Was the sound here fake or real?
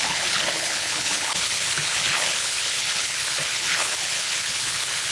fake